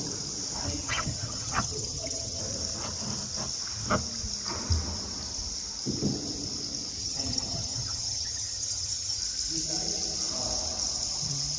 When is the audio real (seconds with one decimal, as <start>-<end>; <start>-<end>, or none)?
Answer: 0.0-0.8; 2.4-7.0; 9.2-11.6